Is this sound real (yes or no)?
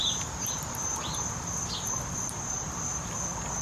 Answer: yes